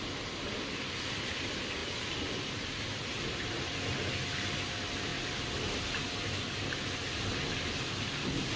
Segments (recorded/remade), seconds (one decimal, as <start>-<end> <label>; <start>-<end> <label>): 0.0-1.8 recorded; 1.8-3.8 remade; 3.8-5.1 recorded; 5.1-7.4 remade; 7.4-8.6 recorded